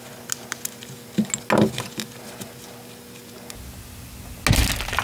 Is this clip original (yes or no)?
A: yes